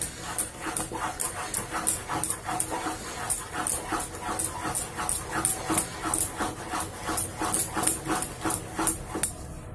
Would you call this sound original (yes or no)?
yes